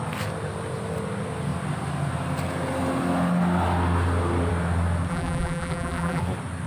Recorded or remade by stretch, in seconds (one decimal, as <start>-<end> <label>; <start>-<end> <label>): 0.0-5.1 recorded; 5.1-6.2 remade; 6.2-6.7 recorded